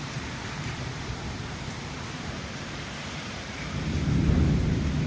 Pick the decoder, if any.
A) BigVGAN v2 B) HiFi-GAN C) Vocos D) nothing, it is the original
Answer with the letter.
A